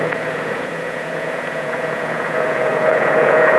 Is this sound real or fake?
fake